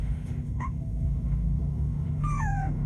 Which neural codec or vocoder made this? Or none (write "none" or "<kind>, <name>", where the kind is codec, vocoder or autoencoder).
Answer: autoencoder, DAC-VAE